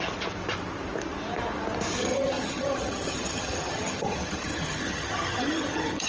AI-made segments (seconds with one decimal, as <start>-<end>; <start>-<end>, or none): 2.0-6.1